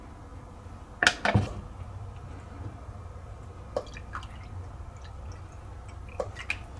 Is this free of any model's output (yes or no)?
yes